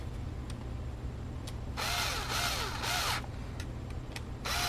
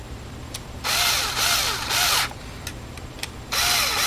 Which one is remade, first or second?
second